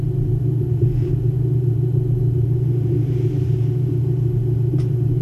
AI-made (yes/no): yes